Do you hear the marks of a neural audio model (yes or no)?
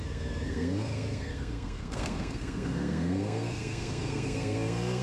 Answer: yes